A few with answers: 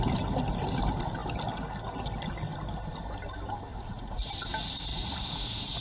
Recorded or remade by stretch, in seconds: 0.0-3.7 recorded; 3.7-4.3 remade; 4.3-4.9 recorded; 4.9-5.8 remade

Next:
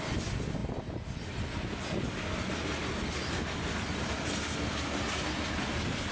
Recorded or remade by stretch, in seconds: 0.0-6.1 recorded

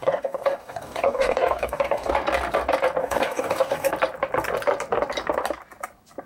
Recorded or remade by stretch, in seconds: 0.0-2.1 remade; 2.1-3.0 recorded; 3.0-3.9 remade; 3.9-6.3 recorded

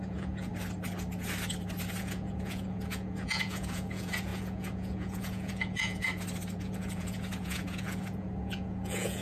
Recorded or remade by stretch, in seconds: 0.0-0.5 remade; 0.5-2.0 recorded; 2.0-6.1 remade; 6.1-6.6 recorded; 6.6-9.2 remade

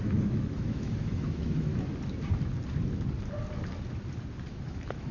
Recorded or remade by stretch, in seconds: 0.0-1.7 remade; 1.7-4.5 recorded; 4.5-5.1 remade

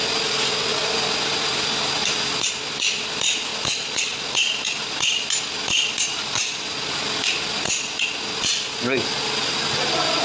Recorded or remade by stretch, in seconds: 0.0-10.2 recorded